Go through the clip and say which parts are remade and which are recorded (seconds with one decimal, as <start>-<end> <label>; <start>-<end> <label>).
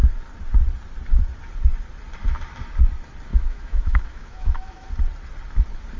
0.0-3.3 recorded; 3.3-4.9 remade; 4.9-6.0 recorded